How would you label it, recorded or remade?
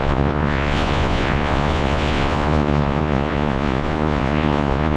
remade